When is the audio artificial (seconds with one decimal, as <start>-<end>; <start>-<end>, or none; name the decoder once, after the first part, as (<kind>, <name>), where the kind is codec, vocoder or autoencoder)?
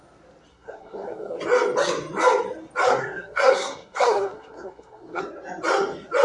0.5-1.4 (codec, SNAC); 2.9-5.2